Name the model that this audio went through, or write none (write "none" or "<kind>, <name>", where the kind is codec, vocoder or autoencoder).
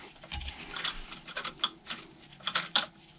none